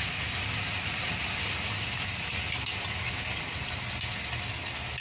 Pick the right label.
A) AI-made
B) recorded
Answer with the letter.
B